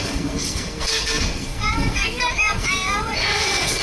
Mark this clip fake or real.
fake